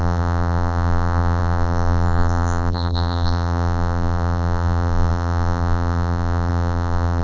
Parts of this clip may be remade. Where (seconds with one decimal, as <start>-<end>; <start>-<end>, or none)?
0.0-7.2